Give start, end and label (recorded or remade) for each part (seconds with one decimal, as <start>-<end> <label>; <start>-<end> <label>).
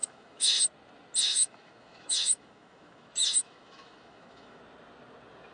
0.0-0.6 remade; 0.6-1.3 recorded; 1.3-4.6 remade; 4.6-5.5 recorded